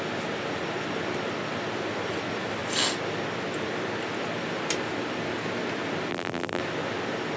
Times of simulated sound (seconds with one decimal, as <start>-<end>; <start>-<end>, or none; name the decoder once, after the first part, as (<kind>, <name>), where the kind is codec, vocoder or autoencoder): 6.1-6.6 (vocoder, BigVGAN v2)